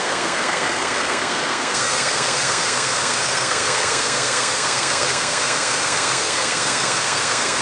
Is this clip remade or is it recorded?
remade